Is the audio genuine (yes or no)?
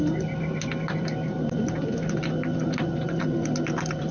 yes